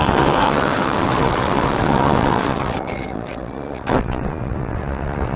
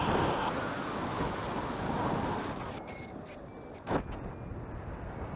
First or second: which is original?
second